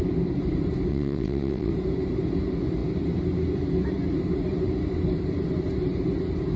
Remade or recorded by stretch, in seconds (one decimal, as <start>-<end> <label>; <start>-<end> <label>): 0.0-0.9 recorded; 0.9-1.7 remade; 1.7-6.6 recorded